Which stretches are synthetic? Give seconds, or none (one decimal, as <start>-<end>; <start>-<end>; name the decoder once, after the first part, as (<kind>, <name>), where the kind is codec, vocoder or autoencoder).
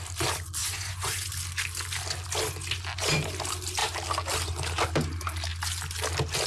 0.6-1.3 (vocoder, Vocos)